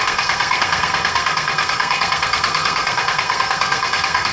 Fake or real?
fake